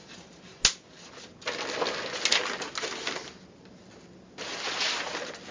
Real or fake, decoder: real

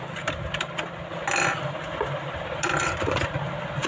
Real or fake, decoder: real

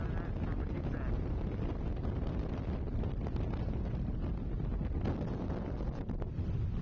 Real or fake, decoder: real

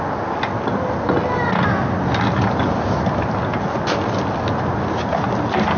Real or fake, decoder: real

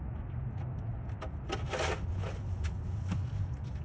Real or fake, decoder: real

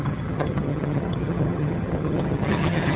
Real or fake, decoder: fake, vocoder, HiFi-GAN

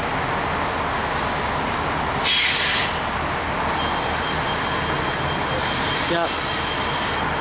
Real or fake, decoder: real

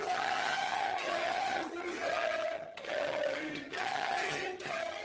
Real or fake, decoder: fake, vocoder, HiFi-GAN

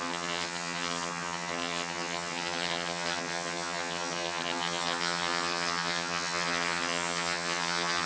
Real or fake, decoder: fake, vocoder, HiFi-GAN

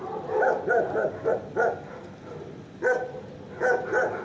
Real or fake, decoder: real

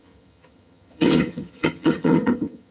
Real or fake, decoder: fake, vocoder, HiFi-GAN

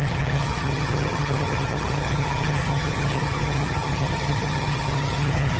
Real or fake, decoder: fake, vocoder, HiFi-GAN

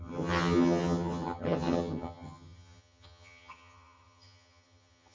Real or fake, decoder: fake, vocoder, HiFi-GAN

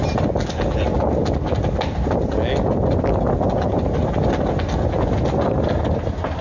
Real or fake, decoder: real